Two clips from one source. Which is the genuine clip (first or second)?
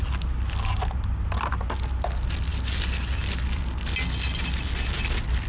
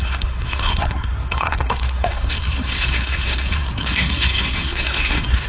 first